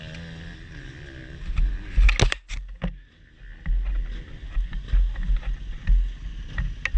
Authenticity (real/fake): real